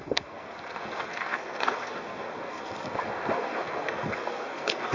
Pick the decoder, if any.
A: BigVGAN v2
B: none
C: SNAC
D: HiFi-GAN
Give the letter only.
C